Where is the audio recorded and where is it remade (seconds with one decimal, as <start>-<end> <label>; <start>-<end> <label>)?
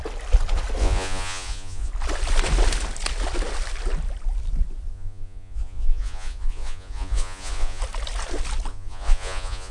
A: 0.0-0.8 recorded; 0.8-1.9 remade; 1.9-4.9 recorded; 4.9-7.8 remade; 7.8-8.7 recorded; 8.7-9.7 remade